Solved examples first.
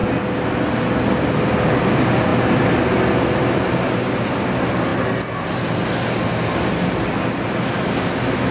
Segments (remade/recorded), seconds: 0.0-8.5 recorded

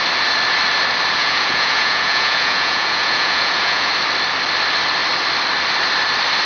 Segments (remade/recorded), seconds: 0.0-1.2 recorded; 1.2-3.9 remade; 3.9-6.5 recorded

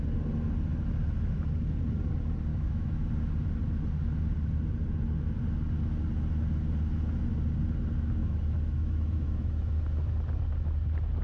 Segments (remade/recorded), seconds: 0.0-2.5 recorded; 2.5-3.1 remade; 3.1-8.2 recorded; 8.2-9.7 remade; 9.7-11.2 recorded

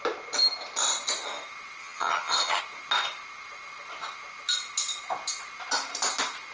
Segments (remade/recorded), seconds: 0.0-1.8 recorded; 1.8-2.6 remade; 2.6-6.5 recorded

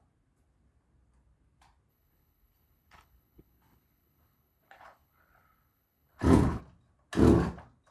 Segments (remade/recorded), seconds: 0.0-1.9 recorded; 1.9-6.6 remade; 6.6-7.9 recorded

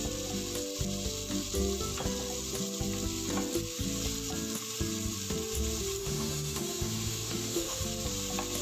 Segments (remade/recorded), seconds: 0.0-6.0 recorded; 6.0-7.8 remade; 7.8-8.6 recorded

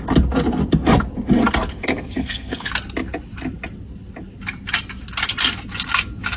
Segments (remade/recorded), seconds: 0.0-1.7 recorded; 1.7-2.7 remade; 2.7-6.4 recorded

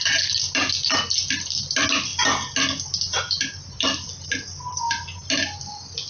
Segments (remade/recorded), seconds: 0.0-6.1 recorded